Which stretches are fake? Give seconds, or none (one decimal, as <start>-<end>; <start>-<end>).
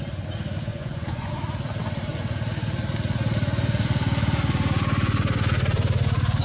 0.7-1.3